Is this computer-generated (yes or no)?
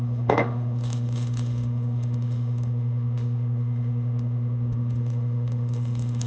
yes